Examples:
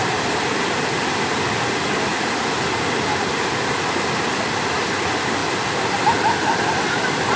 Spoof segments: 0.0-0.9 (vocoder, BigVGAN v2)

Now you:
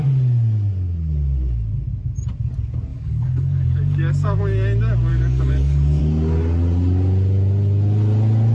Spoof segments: 2.9-4.4 (codec, DAC); 5.1-6.0

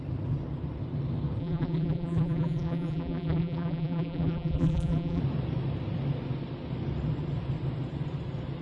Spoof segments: 1.4-5.2 (vocoder, BigVGAN v2)

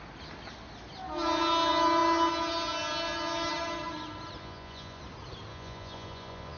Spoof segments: 4.4-5.0 (vocoder, Vocos); 5.5-6.6

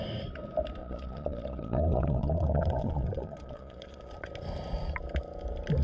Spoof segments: 0.8-4.3 (vocoder, Vocos)

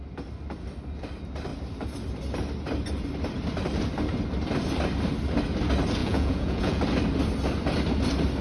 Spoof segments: 6.0-6.8 (vocoder, Vocos)

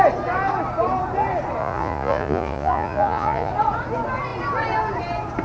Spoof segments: 1.6-3.5 (vocoder, Vocos)

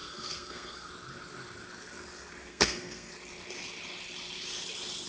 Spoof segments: 0.0-0.9 (codec, SNAC); 2.5-3.1